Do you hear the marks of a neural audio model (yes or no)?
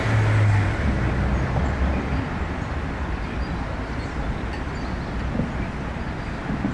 no